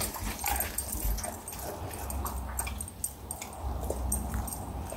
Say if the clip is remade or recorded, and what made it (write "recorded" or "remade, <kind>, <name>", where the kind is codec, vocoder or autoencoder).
recorded